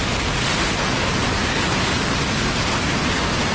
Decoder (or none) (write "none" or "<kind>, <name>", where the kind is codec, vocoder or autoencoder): none